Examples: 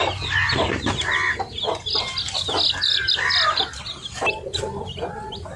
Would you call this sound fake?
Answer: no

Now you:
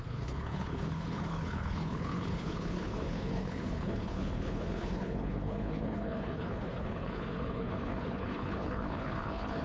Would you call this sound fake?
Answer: yes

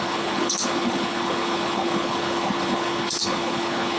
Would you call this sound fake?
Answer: yes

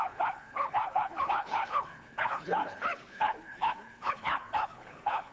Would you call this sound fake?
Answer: yes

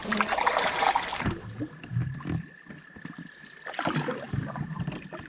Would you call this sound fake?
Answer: no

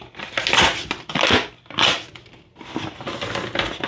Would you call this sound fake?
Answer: no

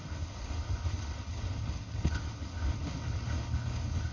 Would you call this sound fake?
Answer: yes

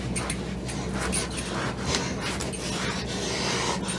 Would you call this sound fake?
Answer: no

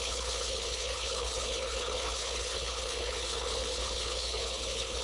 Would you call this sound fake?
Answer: yes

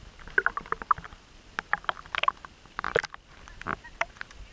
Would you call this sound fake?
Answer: no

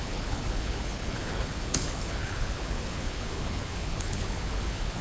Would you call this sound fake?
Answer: yes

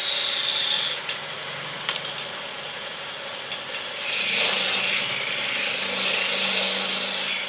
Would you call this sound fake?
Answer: no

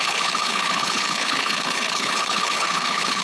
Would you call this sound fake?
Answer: yes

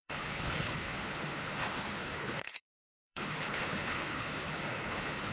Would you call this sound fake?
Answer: yes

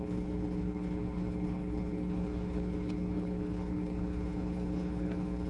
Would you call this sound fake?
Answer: yes